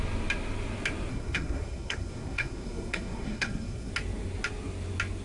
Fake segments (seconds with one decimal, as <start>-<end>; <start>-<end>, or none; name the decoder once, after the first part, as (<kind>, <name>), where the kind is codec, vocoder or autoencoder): 1.1-3.9 (codec, SNAC)

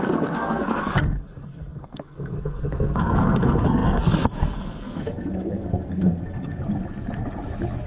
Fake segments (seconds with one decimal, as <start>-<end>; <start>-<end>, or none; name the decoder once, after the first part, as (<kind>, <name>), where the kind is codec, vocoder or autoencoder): 0.0-6.6 (codec, SNAC)

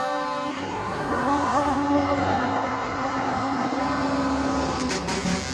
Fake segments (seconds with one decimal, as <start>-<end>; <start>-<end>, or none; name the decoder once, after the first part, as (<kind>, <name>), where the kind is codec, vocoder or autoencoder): 0.5-3.8 (codec, SNAC)

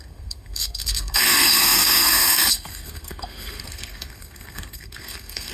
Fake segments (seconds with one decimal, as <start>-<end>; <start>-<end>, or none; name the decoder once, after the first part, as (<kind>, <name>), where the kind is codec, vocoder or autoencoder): 0.0-5.5 (codec, SNAC)

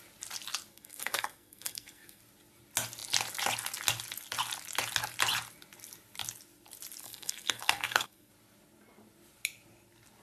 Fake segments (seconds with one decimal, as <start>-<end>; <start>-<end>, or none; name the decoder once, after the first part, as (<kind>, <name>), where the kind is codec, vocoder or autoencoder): 0.7-2.2 (codec, SNAC); 7.0-8.3

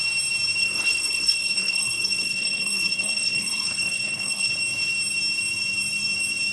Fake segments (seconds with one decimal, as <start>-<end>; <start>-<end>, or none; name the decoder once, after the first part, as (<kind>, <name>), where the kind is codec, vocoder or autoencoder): 0.6-4.5 (codec, SNAC)

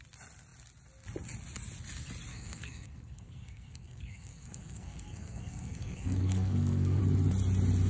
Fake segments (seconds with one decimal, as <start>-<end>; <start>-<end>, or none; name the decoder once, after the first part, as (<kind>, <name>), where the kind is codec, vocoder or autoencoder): 2.3-7.0 (codec, SNAC)

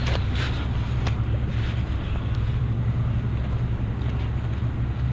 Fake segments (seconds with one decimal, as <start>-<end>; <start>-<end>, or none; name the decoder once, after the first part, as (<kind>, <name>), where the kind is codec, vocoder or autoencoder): none